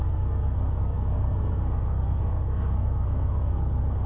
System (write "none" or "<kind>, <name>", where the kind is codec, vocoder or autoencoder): codec, SNAC